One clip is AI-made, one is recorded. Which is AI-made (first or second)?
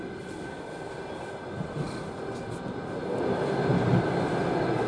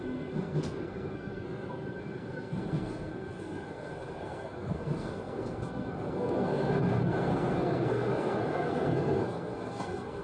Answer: second